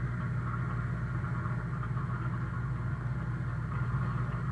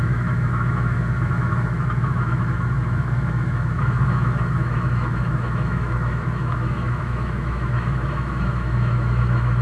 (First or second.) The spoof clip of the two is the second